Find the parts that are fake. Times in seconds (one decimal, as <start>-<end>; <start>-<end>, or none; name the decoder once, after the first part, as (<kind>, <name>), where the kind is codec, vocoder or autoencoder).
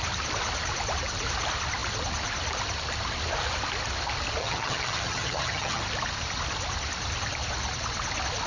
4.4-5.8 (vocoder, HiFi-GAN)